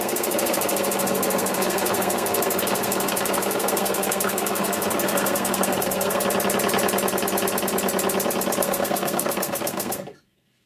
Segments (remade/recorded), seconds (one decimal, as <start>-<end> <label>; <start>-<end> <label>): 0.0-6.2 remade; 6.2-8.6 recorded; 8.6-10.7 remade